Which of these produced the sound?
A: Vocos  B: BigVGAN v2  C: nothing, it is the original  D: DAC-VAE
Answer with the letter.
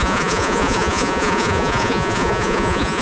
A